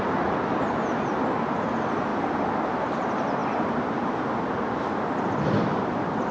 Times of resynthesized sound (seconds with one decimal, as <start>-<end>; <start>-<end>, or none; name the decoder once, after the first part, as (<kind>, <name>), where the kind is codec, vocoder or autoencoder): 0.0-2.1 (vocoder, BigVGAN v2); 2.7-3.4; 5.0-6.3